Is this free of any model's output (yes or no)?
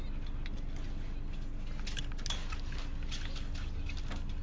yes